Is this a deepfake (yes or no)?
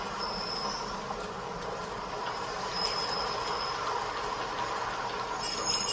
no